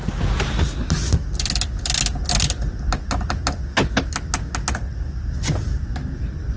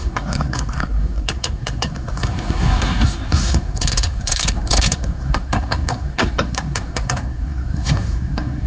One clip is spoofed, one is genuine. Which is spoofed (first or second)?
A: second